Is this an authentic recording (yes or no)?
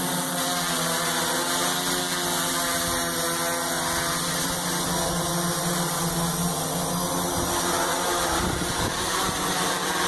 yes